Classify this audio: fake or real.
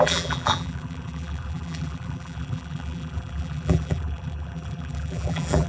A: fake